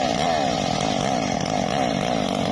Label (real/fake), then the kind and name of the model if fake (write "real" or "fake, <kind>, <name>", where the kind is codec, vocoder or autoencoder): real